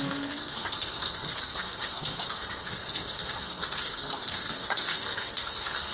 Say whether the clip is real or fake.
fake